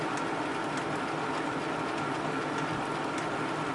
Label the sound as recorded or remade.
recorded